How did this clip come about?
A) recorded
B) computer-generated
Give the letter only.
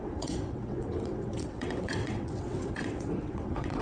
B